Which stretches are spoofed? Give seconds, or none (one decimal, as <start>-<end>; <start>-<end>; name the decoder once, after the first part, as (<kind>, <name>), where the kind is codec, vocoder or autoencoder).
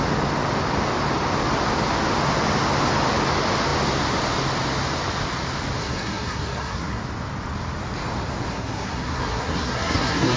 5.8-7.0 (codec, SNAC); 8.5-10.4